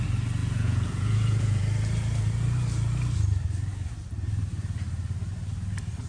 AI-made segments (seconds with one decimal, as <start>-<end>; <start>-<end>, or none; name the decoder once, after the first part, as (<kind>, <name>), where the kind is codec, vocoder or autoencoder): 0.4-1.6 (vocoder, Vocos)